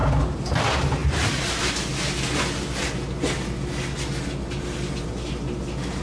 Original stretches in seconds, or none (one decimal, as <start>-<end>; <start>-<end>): 0.0-6.0